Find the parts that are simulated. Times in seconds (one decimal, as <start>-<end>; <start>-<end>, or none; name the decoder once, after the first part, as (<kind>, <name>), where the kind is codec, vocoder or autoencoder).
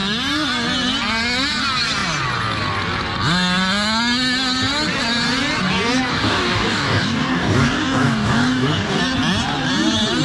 6.1-9.0 (codec, DAC)